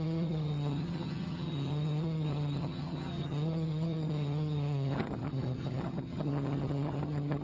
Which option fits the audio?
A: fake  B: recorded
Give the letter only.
A